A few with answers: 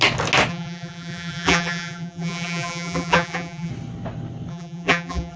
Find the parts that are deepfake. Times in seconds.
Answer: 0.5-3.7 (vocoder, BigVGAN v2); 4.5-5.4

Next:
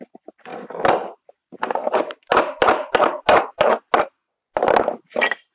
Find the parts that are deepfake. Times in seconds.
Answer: 0.5-1.3 (vocoder, BigVGAN v2)